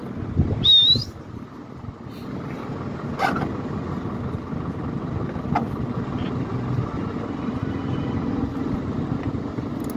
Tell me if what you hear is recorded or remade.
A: recorded